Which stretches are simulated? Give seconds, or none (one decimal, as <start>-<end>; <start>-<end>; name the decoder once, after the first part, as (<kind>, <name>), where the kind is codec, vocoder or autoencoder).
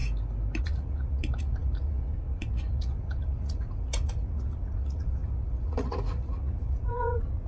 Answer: 0.6-7.5 (vocoder, Vocos)